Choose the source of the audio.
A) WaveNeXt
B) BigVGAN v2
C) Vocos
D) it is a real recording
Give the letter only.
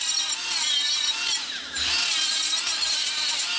D